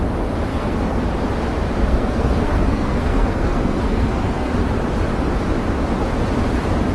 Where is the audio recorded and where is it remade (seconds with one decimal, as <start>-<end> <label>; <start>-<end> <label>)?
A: 0.0-0.5 recorded; 0.5-1.0 remade; 1.0-1.8 recorded; 1.8-4.5 remade; 4.5-6.9 recorded